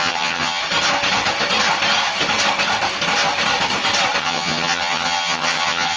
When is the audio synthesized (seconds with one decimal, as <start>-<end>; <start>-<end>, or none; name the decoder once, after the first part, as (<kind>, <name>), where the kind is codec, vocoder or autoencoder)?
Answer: 0.0-0.6 (vocoder, HiFi-GAN); 4.2-6.0